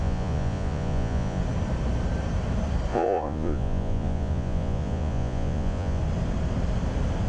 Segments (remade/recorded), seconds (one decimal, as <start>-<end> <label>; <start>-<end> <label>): 0.0-1.4 remade; 1.4-2.9 recorded; 2.9-6.0 remade; 6.0-7.3 recorded